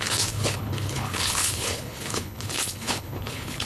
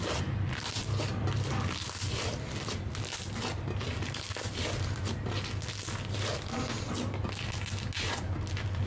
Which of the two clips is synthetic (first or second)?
first